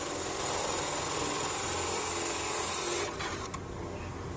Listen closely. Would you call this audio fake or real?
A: real